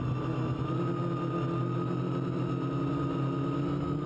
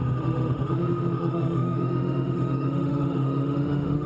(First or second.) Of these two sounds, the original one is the first